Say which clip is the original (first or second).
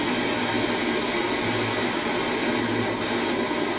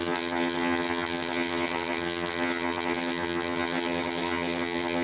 first